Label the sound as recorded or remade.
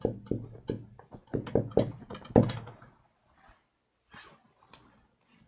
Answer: recorded